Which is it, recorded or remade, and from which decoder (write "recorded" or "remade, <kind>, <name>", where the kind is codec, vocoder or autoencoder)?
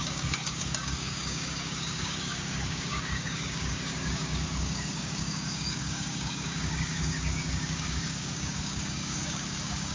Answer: remade, codec, DAC